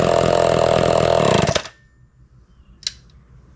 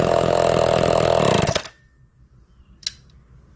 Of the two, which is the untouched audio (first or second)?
first